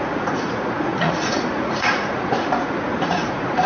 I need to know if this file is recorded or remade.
remade